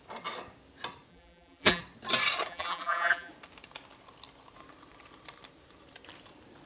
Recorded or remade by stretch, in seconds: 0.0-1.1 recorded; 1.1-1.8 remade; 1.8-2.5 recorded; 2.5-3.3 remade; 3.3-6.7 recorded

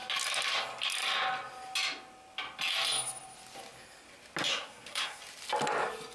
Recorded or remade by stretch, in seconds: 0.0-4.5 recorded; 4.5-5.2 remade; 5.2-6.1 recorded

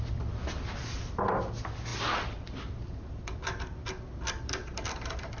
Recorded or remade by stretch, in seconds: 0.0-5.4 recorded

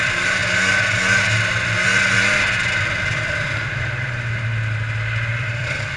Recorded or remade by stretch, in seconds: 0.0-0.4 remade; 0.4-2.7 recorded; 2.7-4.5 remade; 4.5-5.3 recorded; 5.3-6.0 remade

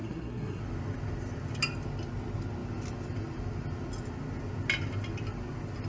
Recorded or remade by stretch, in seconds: 0.0-0.6 remade; 0.6-5.9 recorded